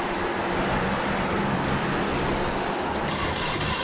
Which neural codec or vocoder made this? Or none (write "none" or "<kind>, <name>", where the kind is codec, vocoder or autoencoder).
none